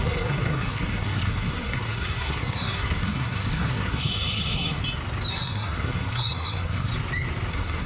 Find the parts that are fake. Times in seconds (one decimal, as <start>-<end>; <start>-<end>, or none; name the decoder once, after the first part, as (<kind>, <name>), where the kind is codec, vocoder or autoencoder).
0.0-4.8 (codec, SNAC); 5.3-6.9; 7.5-7.9